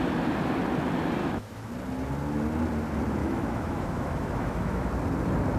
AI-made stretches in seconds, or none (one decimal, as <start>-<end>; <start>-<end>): 1.2-1.7; 3.2-4.9